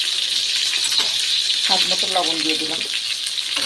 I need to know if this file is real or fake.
real